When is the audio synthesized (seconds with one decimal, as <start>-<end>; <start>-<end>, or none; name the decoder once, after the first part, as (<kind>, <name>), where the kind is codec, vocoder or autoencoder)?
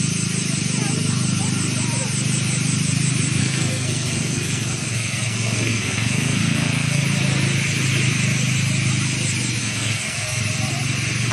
3.4-7.0 (codec, SNAC); 9.6-10.4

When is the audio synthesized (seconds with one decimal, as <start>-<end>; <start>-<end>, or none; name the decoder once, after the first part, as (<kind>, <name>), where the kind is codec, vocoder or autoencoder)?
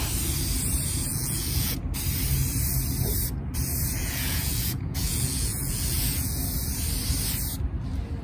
1.1-1.8 (vocoder, Vocos); 4.0-6.4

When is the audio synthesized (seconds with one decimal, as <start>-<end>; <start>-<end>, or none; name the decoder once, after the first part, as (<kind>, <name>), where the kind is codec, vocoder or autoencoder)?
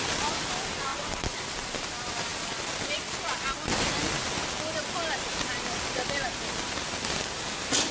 0.9-1.4 (vocoder, WaveNeXt)